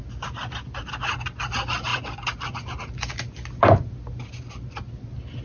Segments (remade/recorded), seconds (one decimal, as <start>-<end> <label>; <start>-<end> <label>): 0.0-5.4 recorded